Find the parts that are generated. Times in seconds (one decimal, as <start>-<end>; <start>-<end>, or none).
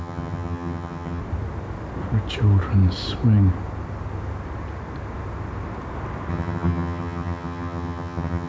0.0-1.2; 6.3-8.5